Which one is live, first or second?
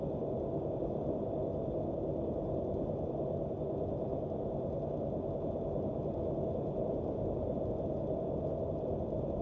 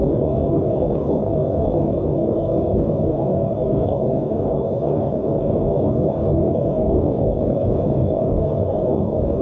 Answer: first